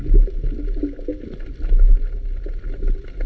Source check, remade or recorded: recorded